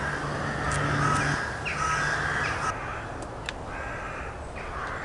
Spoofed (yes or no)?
no